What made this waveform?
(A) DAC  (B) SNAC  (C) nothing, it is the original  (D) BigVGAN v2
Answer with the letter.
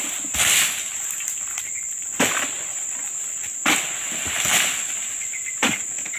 C